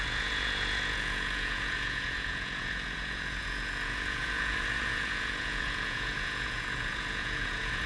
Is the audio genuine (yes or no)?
no